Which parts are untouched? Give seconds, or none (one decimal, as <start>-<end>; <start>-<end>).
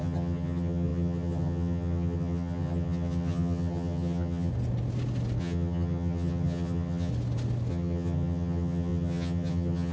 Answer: 4.5-5.4; 7.1-7.7